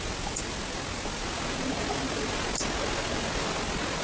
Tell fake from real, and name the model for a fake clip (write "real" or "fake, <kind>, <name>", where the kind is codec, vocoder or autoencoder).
real